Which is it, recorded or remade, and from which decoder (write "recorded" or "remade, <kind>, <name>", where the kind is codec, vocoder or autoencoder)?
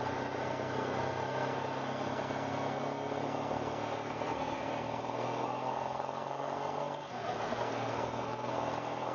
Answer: remade, codec, SNAC